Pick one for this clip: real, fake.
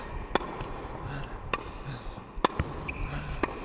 real